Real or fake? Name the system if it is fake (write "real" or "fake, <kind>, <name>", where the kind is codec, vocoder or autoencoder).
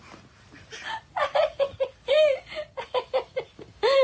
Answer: real